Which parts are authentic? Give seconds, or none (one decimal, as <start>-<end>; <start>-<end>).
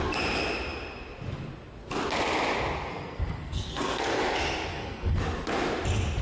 0.0-2.9; 4.2-4.7; 5.2-6.2